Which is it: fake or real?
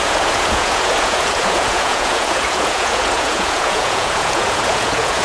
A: fake